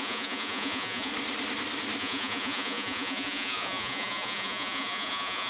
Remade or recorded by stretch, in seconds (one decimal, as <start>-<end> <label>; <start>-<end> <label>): 0.0-1.1 remade; 1.1-2.0 recorded; 2.0-5.5 remade